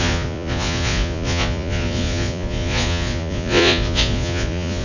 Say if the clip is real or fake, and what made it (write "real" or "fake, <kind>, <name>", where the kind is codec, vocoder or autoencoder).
fake, vocoder, Vocos